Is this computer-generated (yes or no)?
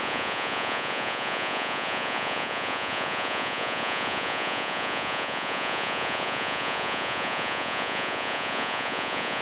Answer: yes